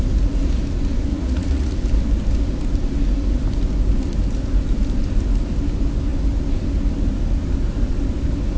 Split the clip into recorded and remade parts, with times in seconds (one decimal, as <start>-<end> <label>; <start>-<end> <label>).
0.0-1.1 recorded; 1.1-1.7 remade; 1.7-8.6 recorded